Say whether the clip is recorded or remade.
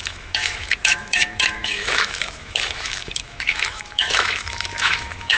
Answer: remade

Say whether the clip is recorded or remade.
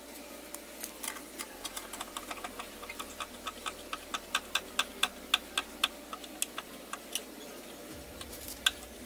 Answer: recorded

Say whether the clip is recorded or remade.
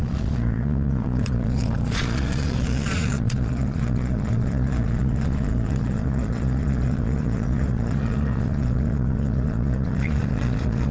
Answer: remade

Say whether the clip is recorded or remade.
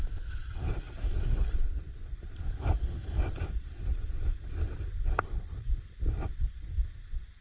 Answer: recorded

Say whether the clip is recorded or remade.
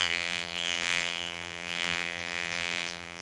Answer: remade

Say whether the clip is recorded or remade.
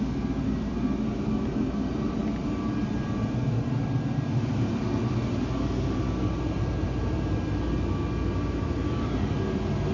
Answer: recorded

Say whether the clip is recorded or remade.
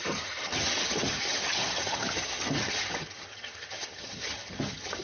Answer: remade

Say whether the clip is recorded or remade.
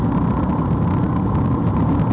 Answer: recorded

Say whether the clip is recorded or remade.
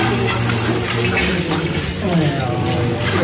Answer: recorded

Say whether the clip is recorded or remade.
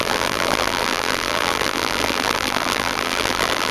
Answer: remade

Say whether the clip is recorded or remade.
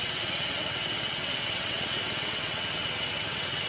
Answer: remade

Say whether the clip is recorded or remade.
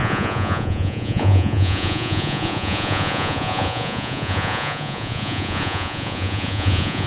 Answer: remade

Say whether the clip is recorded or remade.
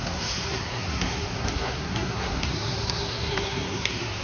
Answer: remade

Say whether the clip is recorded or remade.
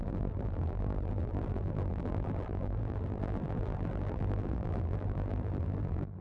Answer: remade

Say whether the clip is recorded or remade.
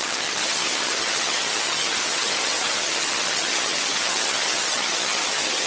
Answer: remade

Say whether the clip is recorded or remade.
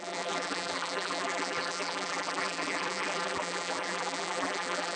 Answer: remade